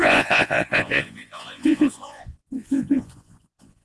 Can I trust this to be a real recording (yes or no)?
no